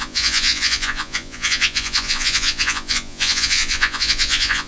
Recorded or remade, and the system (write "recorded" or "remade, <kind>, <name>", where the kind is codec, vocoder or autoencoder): remade, vocoder, Vocos